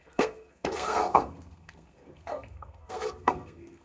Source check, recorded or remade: remade